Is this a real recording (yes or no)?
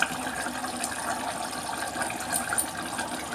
yes